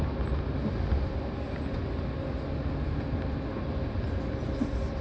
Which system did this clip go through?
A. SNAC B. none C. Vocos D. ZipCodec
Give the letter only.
B